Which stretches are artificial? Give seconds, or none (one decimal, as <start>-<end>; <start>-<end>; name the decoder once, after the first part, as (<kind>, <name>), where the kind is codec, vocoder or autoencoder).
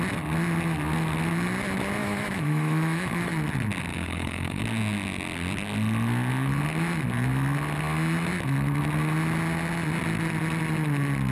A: 2.0-3.3 (autoencoder, DAC-VAE); 3.9-4.6